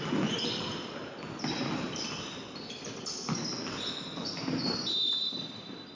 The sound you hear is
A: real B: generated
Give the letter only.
A